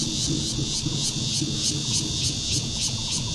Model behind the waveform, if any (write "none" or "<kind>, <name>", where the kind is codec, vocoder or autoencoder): vocoder, Vocos